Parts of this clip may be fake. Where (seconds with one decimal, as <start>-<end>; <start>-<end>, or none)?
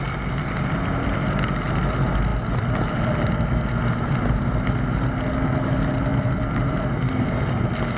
none